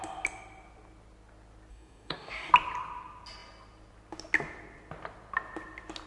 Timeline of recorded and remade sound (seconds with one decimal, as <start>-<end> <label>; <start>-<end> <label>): 0.0-1.7 recorded; 1.7-2.5 remade; 2.5-6.1 recorded